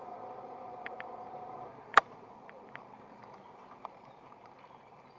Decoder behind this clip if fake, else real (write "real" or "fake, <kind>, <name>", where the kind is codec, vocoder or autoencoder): fake, vocoder, BigVGAN v2